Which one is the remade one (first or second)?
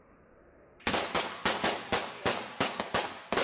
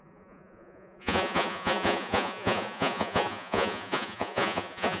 second